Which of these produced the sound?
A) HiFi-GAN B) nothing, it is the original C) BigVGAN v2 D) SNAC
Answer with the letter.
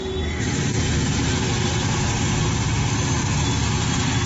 B